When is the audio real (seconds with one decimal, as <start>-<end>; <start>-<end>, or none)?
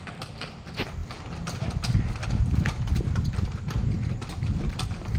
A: 0.0-5.2